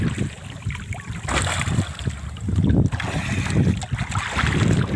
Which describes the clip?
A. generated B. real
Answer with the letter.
B